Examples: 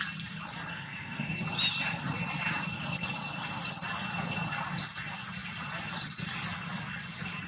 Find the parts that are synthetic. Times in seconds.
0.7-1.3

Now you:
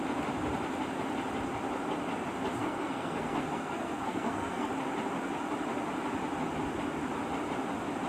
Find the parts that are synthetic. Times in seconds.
2.6-4.7